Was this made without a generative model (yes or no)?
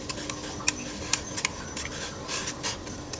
yes